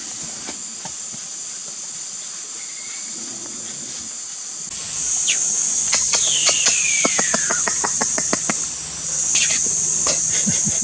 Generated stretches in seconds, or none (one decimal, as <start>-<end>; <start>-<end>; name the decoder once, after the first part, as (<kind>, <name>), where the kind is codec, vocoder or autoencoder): none